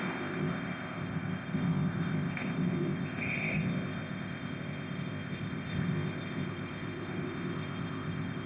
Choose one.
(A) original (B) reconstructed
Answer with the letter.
B